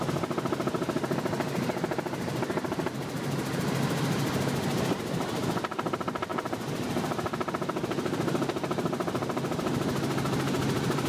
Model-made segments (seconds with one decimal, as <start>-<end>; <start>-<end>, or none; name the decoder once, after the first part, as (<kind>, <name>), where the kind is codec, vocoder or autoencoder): none